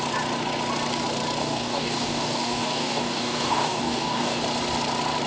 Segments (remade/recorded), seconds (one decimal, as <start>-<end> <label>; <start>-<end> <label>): 0.0-1.4 recorded; 1.4-4.4 remade; 4.4-5.3 recorded